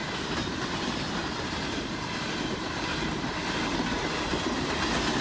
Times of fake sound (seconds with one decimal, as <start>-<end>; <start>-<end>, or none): none